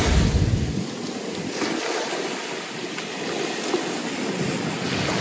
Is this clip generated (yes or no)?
no